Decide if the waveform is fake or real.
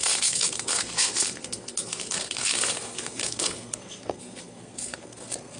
fake